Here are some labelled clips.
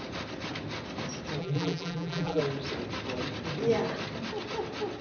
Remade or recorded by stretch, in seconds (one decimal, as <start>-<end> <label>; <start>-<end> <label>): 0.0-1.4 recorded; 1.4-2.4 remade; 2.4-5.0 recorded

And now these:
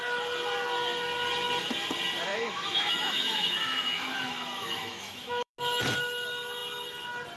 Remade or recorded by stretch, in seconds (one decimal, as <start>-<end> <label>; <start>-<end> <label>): 0.0-2.3 recorded; 2.3-5.5 remade; 5.5-7.4 recorded

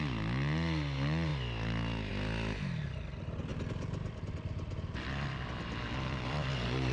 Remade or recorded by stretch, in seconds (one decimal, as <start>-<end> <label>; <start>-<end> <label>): 0.0-3.5 recorded; 3.5-6.5 remade; 6.5-6.9 recorded

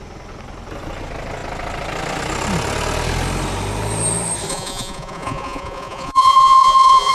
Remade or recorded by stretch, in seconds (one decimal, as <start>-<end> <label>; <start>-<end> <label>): 0.0-4.5 recorded; 4.5-7.1 remade